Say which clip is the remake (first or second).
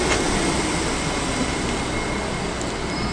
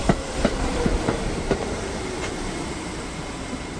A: second